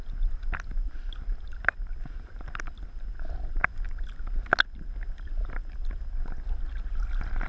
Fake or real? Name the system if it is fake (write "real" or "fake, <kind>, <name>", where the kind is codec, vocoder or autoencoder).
real